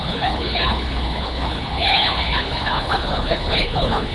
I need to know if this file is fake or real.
fake